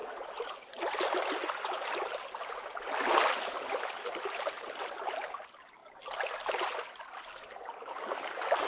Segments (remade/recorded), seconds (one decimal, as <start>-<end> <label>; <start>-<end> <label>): 0.0-0.8 remade; 0.8-8.7 recorded